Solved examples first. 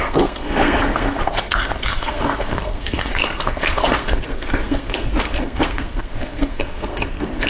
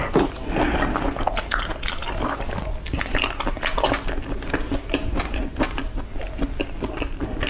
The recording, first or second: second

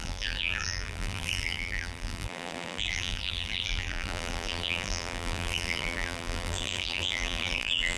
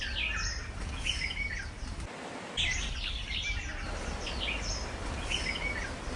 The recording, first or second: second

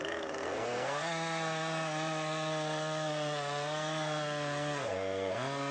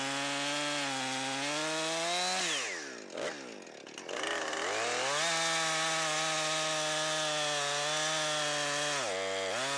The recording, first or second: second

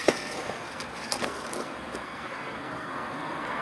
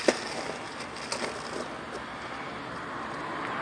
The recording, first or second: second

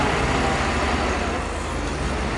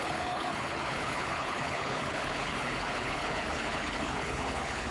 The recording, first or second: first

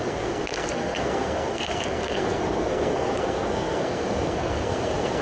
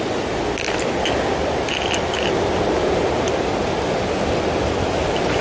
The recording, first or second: second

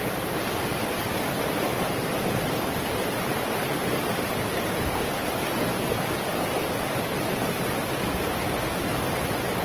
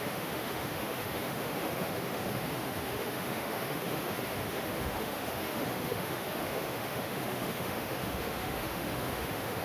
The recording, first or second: first